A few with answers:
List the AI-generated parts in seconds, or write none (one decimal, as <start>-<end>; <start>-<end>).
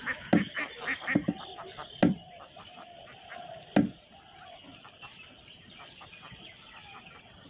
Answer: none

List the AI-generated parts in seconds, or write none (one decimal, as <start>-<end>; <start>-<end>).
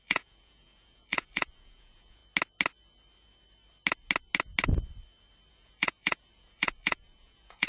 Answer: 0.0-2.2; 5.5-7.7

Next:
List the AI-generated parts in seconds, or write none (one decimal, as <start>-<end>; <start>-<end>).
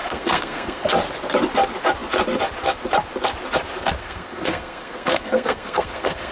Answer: 0.0-0.9; 4.0-6.3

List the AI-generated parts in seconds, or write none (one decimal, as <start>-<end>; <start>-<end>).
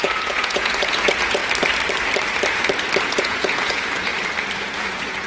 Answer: 0.0-1.4; 3.0-4.1; 4.6-5.3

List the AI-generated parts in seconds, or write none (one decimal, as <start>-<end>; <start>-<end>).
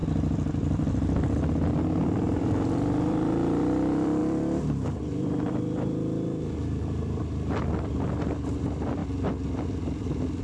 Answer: 0.0-9.0; 9.6-10.4